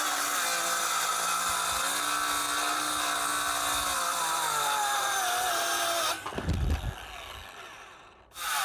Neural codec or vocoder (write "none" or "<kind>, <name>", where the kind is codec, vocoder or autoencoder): none